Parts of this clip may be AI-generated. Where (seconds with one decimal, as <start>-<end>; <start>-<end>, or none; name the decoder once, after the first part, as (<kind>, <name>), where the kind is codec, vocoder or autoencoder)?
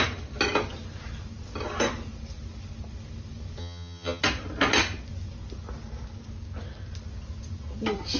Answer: 3.6-4.2 (vocoder, HiFi-GAN)